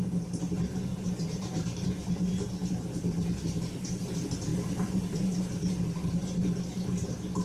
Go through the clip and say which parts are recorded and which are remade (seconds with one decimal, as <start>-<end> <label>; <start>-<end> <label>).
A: 0.0-0.9 recorded; 0.9-2.1 remade; 2.1-4.5 recorded; 4.5-5.4 remade; 5.4-7.4 recorded